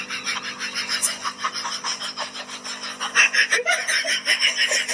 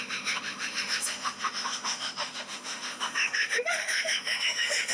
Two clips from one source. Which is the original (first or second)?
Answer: first